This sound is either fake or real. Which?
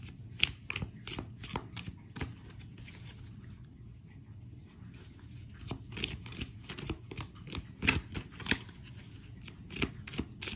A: real